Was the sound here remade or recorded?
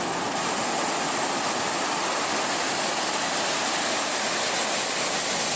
recorded